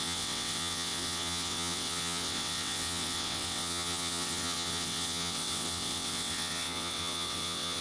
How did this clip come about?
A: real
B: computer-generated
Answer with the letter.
B